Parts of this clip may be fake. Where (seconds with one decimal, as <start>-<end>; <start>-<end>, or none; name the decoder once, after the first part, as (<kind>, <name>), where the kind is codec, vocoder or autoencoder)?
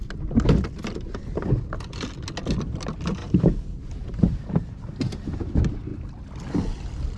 3.2-5.4 (vocoder, BigVGAN v2)